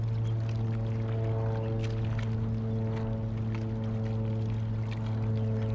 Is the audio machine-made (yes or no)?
no